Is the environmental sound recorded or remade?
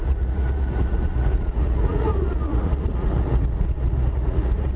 remade